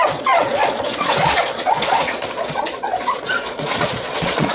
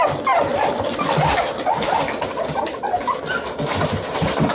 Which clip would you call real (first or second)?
second